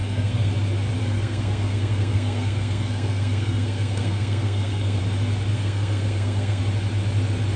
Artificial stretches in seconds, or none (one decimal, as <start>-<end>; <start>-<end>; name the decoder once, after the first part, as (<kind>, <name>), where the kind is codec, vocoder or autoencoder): 0.0-0.5 (codec, SNAC); 1.0-5.0; 5.5-6.6